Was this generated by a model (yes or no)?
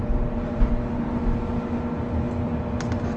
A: no